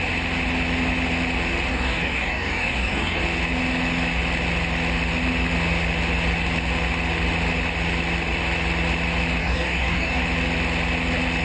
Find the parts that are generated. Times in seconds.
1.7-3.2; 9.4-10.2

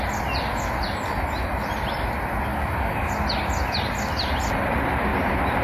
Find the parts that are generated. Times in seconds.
2.5-3.1

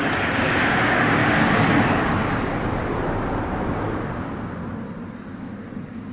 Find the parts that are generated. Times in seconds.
0.0-1.2; 1.7-2.1